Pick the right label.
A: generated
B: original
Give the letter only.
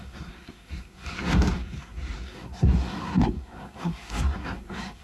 A